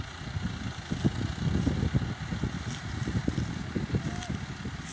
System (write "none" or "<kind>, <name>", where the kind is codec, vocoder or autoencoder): none